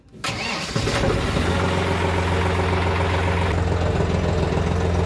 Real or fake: real